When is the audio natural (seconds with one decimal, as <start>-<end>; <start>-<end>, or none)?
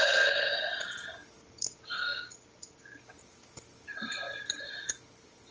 0.0-5.5